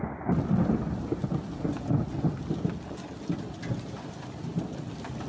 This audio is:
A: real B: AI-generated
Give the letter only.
A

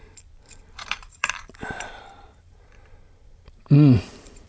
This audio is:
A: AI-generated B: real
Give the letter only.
A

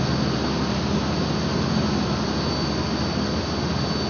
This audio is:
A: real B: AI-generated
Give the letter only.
A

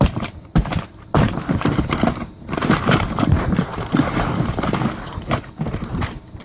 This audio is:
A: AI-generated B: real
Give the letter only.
A